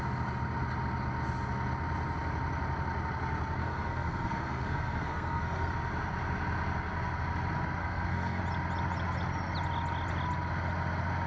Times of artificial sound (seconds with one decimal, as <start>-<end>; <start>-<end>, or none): 3.6-5.7; 7.8-8.4